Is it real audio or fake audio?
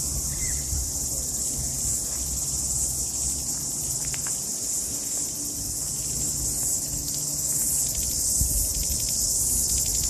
real